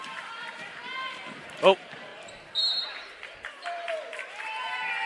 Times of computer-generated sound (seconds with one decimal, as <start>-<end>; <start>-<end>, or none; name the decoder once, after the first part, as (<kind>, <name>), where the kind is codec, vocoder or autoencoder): 0.0-0.8 (vocoder, BigVGAN v2); 1.4-2.1; 2.9-5.1